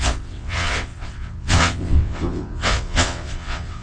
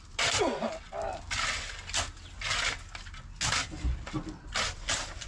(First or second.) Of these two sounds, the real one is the second